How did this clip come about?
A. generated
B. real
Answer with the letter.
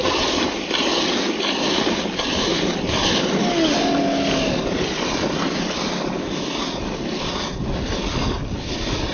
B